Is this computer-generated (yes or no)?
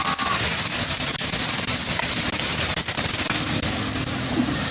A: no